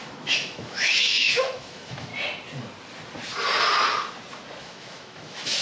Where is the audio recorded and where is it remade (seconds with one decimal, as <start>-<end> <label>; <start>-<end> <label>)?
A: 0.0-2.1 remade; 2.1-4.6 recorded; 4.6-5.6 remade